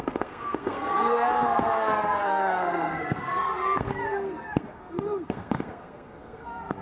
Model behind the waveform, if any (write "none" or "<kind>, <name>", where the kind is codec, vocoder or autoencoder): codec, SNAC